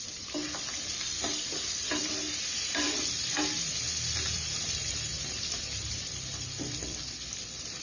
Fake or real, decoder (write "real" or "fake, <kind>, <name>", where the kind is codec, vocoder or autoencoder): fake, vocoder, BigVGAN v2